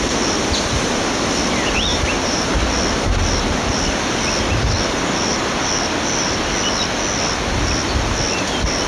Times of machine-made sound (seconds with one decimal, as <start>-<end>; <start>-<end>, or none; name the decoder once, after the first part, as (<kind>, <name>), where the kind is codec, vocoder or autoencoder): 1.9-2.4 (vocoder, BigVGAN v2)